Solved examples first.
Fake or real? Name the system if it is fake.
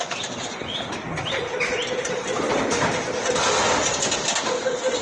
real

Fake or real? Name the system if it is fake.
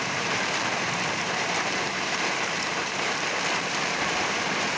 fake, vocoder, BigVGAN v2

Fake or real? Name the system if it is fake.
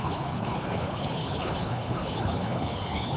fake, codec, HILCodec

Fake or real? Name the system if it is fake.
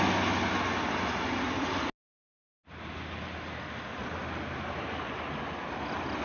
real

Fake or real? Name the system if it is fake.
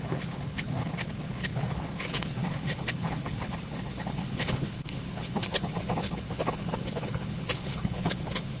fake, codec, HILCodec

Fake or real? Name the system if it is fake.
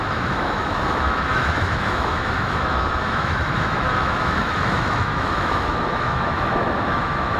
fake, autoencoder, DAC-VAE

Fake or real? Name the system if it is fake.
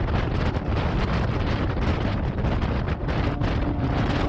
real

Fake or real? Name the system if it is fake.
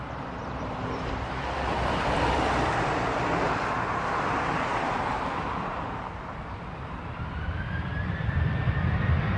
fake, vocoder, BigVGAN v2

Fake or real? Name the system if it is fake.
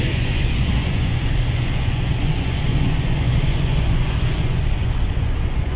fake, vocoder, Vocos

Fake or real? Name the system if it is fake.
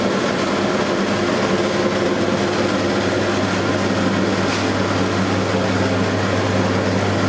real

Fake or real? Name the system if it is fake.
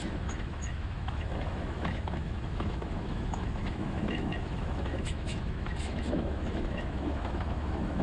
fake, autoencoder, DAC-VAE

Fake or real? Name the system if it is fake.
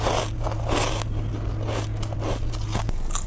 real